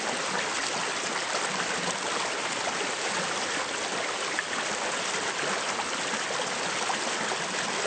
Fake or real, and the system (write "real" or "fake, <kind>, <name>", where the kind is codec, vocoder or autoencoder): real